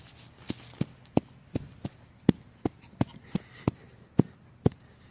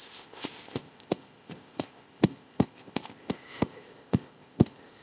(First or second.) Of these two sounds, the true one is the first